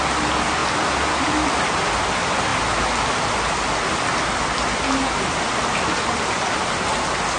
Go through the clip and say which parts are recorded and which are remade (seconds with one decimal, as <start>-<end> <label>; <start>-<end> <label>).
0.0-7.4 recorded

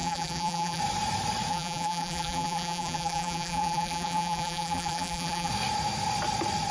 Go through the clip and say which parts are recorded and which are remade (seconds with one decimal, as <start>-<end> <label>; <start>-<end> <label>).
0.0-0.8 remade; 0.8-1.5 recorded; 1.5-5.5 remade; 5.5-6.7 recorded

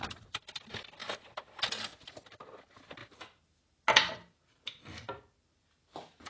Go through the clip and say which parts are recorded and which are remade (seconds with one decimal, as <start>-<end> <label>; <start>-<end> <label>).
0.0-1.0 remade; 1.0-1.7 recorded; 1.7-3.0 remade; 3.0-4.4 recorded; 4.4-6.3 remade

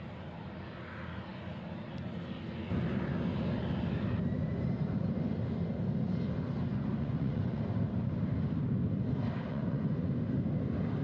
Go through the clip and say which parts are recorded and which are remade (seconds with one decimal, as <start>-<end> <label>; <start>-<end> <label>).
0.0-6.7 recorded; 6.7-7.6 remade; 7.6-9.5 recorded; 9.5-10.1 remade; 10.1-11.0 recorded

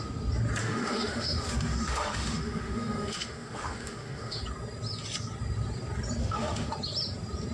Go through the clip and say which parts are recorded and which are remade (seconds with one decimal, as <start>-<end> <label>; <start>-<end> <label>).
0.0-0.6 recorded; 0.6-4.4 remade; 4.4-6.2 recorded; 6.2-6.7 remade; 6.7-7.5 recorded

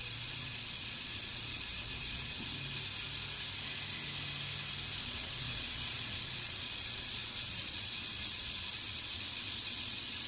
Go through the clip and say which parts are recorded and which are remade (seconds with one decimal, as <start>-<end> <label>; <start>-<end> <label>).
0.0-2.5 remade; 2.5-5.0 recorded; 5.0-10.3 remade

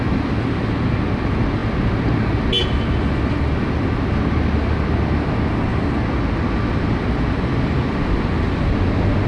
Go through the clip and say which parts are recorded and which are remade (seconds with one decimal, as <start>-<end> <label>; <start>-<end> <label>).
0.0-9.3 recorded